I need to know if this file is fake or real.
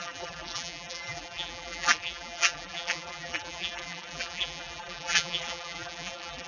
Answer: fake